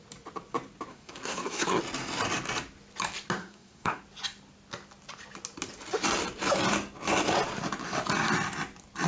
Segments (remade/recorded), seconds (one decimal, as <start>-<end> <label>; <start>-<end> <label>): 0.0-0.9 recorded; 0.9-1.8 remade; 1.8-3.4 recorded; 3.4-4.0 remade; 4.0-9.1 recorded